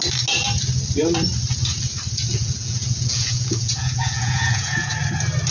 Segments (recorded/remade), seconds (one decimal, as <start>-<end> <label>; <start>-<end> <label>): 0.0-2.3 recorded; 2.3-4.9 remade; 4.9-5.5 recorded